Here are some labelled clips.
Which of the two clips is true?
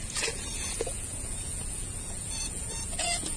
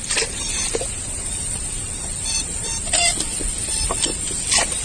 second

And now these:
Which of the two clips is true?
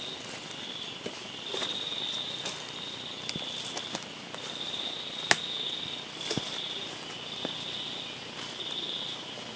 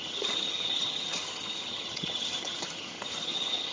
first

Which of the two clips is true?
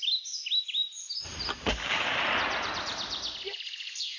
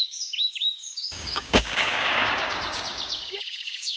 first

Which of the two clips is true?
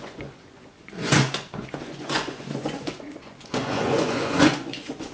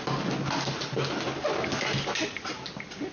second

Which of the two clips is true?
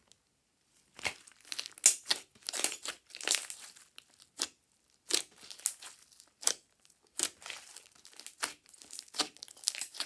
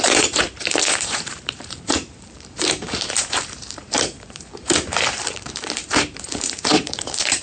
first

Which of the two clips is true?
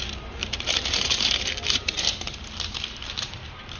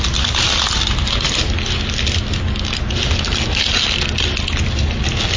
second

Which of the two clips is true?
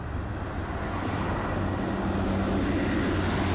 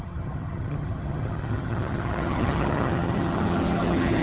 first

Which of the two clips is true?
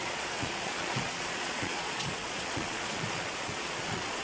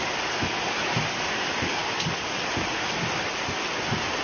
second